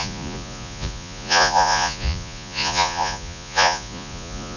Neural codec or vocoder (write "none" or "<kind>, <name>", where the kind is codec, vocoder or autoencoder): vocoder, Vocos